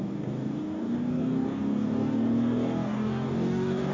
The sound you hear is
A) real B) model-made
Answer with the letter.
B